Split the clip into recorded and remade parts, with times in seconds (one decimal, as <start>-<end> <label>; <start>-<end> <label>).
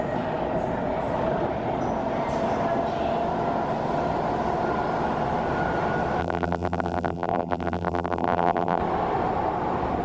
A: 0.0-6.2 recorded; 6.2-8.8 remade; 8.8-10.0 recorded